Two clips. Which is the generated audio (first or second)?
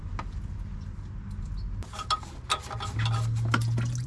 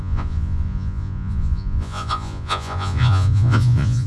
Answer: second